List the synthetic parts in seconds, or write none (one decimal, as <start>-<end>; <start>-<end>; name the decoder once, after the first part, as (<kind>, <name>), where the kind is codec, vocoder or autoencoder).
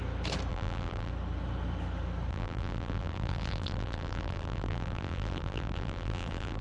0.5-1.1 (vocoder, BigVGAN v2); 2.3-6.6